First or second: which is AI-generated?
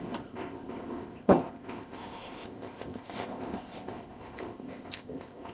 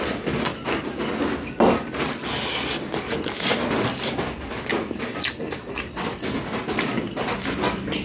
first